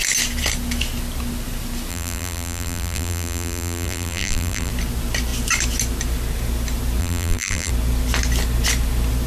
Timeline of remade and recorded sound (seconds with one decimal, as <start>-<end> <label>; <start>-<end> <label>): 0.0-1.9 recorded; 1.9-4.7 remade; 4.7-7.0 recorded; 7.0-7.7 remade; 7.7-9.3 recorded